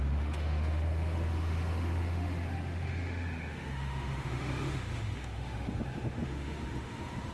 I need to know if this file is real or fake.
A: fake